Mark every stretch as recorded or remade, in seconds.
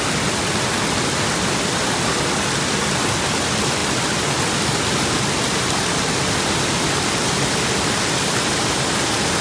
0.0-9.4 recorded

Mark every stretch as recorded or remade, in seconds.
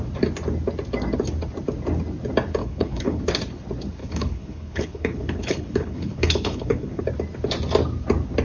0.0-2.6 recorded; 2.6-3.2 remade; 3.2-4.0 recorded; 4.0-7.0 remade; 7.0-8.4 recorded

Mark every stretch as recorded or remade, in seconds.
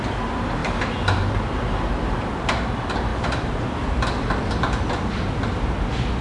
0.0-0.6 recorded; 0.6-2.5 remade; 2.5-3.1 recorded; 3.1-6.2 remade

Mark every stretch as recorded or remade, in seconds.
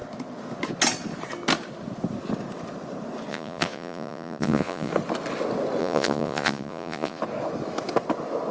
0.0-3.3 recorded; 3.3-4.9 remade; 4.9-5.8 recorded; 5.8-7.2 remade; 7.2-8.5 recorded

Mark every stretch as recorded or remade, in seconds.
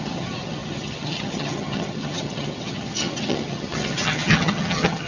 0.0-5.1 remade